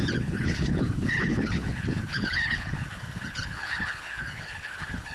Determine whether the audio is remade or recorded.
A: remade